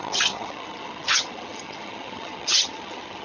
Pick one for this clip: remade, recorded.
remade